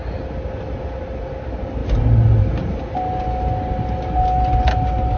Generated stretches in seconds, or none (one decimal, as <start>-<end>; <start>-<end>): none